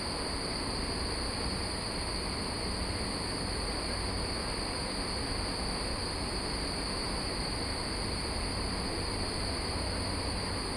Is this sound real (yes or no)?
yes